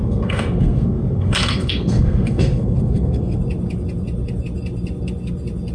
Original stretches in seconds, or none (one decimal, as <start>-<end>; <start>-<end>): 3.4-5.7